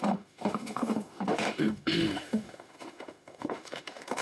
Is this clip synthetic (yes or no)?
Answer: yes